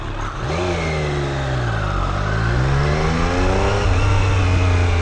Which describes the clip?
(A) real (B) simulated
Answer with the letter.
A